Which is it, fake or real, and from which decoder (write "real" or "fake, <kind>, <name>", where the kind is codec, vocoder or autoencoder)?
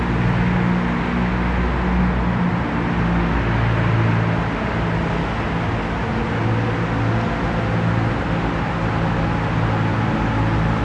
real